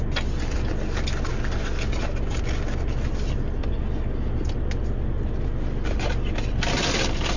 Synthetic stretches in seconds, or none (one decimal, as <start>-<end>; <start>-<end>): none